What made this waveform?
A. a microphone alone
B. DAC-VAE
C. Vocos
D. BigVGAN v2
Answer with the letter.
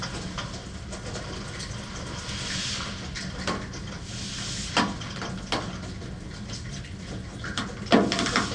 A